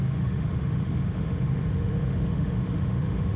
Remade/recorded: remade